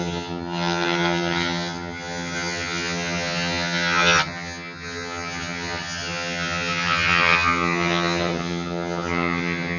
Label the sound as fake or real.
fake